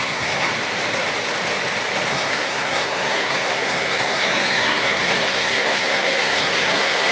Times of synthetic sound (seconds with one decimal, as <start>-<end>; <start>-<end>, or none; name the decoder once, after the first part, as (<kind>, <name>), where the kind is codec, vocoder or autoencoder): 0.0-0.5 (codec, SNAC); 2.1-7.1

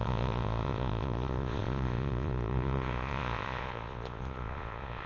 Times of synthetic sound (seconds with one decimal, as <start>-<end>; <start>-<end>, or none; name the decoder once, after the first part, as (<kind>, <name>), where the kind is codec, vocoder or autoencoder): 0.0-5.1 (vocoder, Vocos)

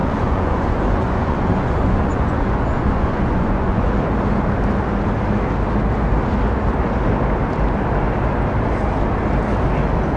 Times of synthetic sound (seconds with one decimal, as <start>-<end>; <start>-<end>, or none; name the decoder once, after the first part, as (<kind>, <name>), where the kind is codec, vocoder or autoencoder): 0.0-3.9 (vocoder, Vocos)

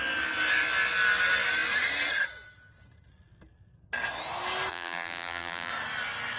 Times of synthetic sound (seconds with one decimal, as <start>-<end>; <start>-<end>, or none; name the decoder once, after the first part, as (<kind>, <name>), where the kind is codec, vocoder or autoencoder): 4.7-5.7 (vocoder, BigVGAN v2)

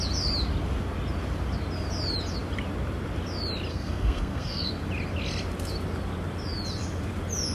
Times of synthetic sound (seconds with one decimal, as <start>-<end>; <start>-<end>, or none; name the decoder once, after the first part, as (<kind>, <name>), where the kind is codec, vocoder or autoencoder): 3.7-4.7 (codec, SNAC)

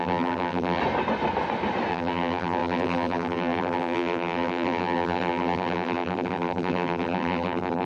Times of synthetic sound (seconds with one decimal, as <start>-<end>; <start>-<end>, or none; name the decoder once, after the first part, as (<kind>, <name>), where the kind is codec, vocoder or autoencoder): 0.0-0.8 (vocoder, BigVGAN v2); 1.9-7.9

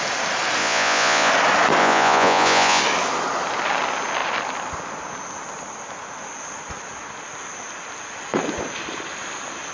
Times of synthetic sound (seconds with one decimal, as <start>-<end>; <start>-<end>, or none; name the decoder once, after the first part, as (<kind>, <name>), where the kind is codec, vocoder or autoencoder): 0.6-1.3 (vocoder, Vocos); 1.8-2.8

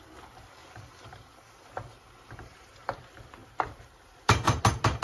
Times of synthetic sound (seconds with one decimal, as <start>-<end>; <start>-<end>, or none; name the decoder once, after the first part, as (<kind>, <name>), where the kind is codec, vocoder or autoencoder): 0.6-3.0 (vocoder, BigVGAN v2); 3.4-4.6